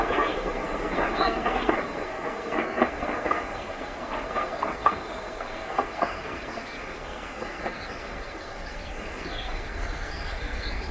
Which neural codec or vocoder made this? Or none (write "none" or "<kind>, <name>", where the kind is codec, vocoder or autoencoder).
codec, SNAC